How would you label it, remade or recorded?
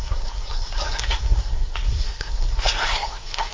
remade